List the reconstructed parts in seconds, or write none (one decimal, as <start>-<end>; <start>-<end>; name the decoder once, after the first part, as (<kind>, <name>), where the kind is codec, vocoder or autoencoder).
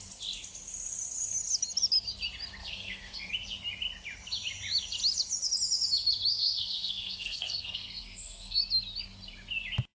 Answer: 2.6-3.3 (codec, SNAC); 6.3-8.6